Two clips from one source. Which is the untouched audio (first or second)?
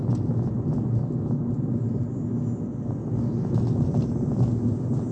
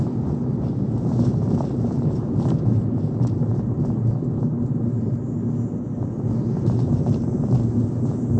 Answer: first